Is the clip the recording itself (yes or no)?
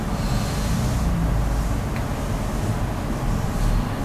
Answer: yes